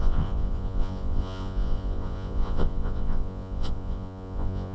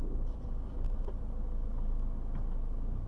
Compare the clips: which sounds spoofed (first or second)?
first